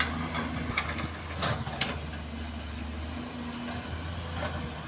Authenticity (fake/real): real